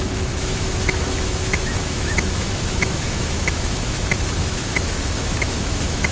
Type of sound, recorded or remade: remade